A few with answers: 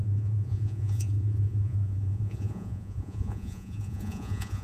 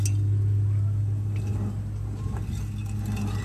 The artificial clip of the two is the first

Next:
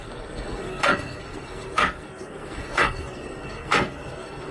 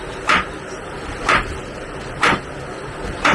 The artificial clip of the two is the first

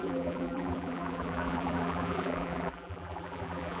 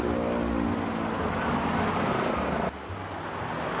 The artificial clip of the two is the first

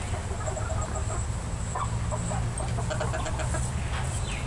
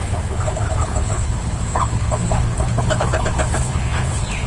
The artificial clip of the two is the second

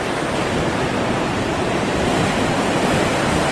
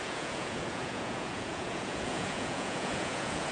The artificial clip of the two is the second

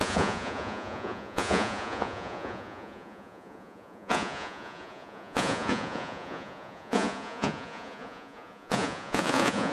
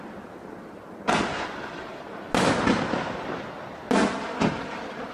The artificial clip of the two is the first